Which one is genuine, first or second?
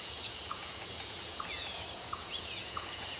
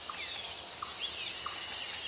second